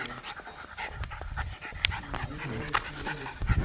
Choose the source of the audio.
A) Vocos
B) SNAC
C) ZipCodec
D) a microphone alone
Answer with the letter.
D